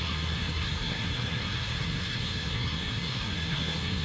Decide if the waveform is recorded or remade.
remade